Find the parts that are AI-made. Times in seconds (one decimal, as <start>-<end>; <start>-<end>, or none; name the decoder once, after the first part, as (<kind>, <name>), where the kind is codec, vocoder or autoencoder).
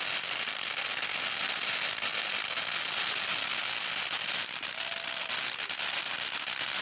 none